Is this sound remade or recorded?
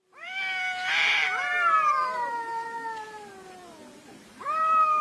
remade